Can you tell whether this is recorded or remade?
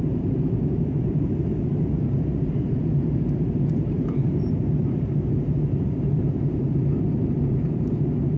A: remade